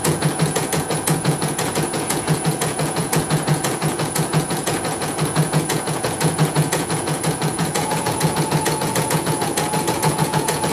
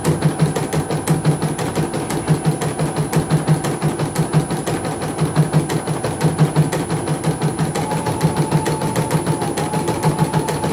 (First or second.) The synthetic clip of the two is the first